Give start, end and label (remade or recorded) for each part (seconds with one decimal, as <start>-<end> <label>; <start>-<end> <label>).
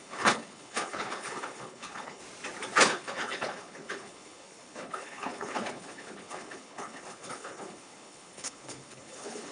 0.0-2.2 remade; 2.2-2.8 recorded; 2.8-9.5 remade